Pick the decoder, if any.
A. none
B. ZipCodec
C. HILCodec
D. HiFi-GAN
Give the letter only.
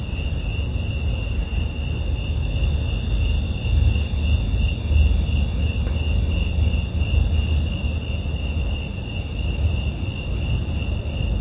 A